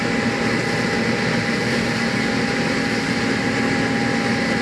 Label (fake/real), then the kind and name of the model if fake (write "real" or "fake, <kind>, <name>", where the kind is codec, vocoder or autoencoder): real